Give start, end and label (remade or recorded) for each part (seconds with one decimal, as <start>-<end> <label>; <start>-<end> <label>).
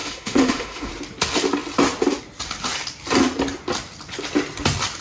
0.0-0.9 remade; 0.9-5.0 recorded